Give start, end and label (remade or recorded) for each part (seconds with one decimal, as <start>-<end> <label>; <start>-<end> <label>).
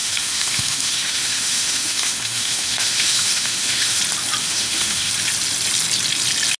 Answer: 0.0-4.0 remade; 4.0-4.4 recorded; 4.4-5.1 remade; 5.1-6.6 recorded